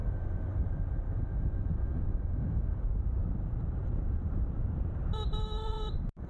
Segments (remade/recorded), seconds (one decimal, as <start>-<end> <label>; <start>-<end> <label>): 0.0-6.3 remade

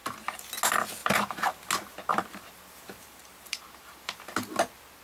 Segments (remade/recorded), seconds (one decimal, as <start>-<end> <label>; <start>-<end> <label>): 0.0-0.5 remade; 0.5-1.0 recorded; 1.0-1.7 remade; 1.7-2.1 recorded; 2.1-4.2 remade; 4.2-5.0 recorded